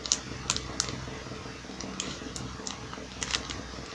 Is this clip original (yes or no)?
yes